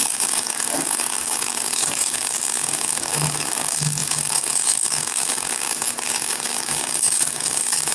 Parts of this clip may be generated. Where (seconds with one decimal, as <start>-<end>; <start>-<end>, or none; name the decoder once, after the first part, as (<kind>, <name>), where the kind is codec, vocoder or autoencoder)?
0.0-7.9 (codec, DAC)